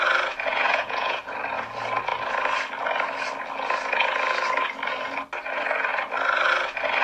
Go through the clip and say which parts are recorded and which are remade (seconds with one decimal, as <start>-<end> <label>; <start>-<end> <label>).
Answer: 0.0-0.5 recorded; 0.5-1.2 remade; 1.2-7.0 recorded